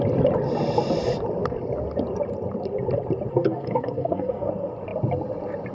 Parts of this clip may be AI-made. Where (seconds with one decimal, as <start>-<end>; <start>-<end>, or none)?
3.3-4.5